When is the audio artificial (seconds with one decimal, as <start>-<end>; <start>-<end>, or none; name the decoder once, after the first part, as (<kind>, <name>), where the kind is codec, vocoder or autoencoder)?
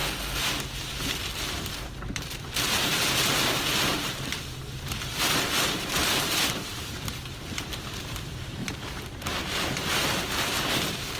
1.5-11.2 (vocoder, BigVGAN v2)